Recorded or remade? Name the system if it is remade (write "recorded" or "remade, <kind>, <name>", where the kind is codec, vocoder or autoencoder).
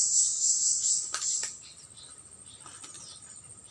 recorded